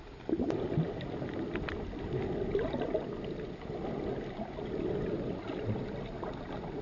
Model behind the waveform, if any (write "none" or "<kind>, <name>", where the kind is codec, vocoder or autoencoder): none